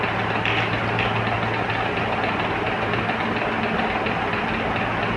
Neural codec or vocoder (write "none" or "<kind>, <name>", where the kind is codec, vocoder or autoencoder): none